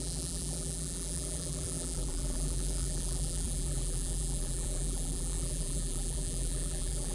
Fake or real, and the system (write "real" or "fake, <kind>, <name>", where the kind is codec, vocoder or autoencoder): fake, vocoder, BigVGAN v2